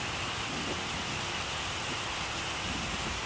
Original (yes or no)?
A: yes